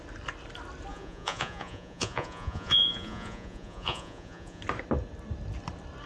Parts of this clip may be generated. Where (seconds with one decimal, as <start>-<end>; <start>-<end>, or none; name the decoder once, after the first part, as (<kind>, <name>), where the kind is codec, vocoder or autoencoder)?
0.9-4.6 (vocoder, Vocos)